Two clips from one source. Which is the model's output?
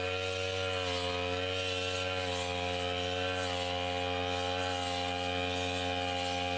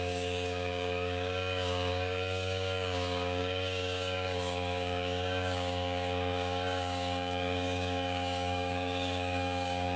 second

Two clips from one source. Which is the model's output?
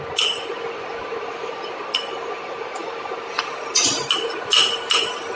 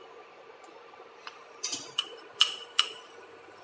second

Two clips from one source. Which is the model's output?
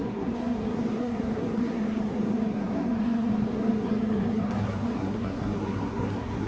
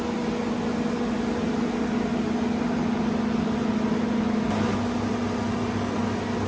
first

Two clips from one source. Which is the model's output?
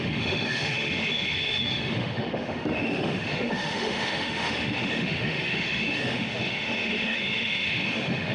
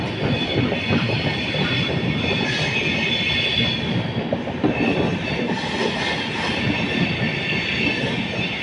first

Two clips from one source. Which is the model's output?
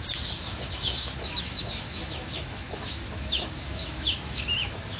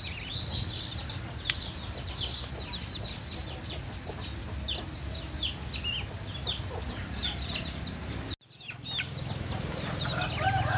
first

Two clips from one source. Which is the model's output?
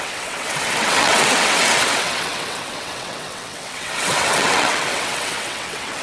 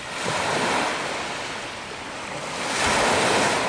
first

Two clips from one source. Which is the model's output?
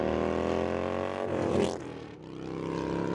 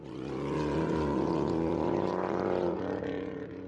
second